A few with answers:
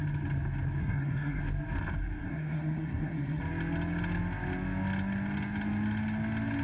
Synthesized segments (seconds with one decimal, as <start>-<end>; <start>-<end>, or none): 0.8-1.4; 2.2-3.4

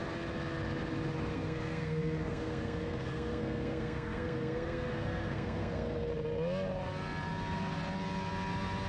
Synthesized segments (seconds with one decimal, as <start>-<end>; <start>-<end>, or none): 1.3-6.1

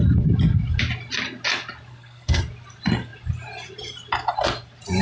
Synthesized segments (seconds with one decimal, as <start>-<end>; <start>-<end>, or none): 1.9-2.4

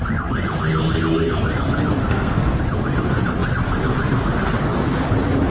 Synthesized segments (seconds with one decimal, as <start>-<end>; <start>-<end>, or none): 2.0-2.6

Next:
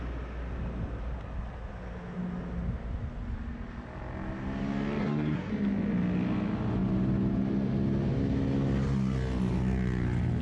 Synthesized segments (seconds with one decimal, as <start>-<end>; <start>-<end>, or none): 5.0-5.5

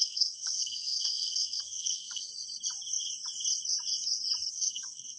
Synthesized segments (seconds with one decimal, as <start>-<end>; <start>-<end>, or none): 0.0-2.3; 4.5-5.2